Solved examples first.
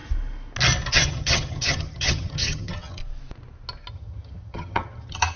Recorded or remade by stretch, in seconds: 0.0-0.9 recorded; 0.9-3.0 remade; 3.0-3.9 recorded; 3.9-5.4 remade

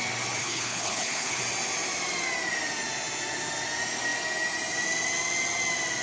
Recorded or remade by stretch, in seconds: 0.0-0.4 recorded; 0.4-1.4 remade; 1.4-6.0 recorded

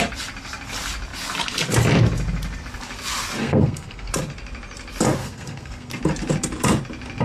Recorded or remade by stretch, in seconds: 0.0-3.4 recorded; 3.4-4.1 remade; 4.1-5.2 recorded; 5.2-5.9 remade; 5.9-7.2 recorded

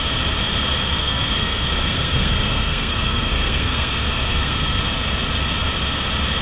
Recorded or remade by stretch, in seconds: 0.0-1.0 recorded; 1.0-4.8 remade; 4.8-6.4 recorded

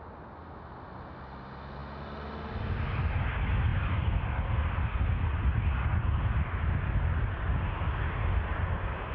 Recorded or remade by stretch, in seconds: 0.0-9.1 recorded

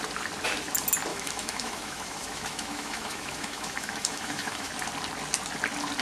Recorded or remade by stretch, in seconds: 0.0-1.1 recorded; 1.1-4.7 remade; 4.7-6.0 recorded

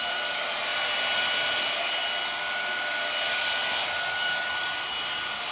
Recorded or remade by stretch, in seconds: 0.0-5.5 recorded